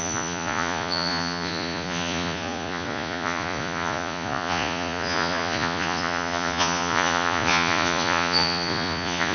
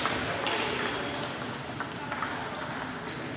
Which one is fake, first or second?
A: first